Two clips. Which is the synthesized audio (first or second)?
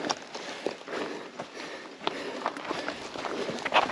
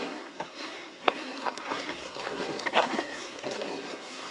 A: second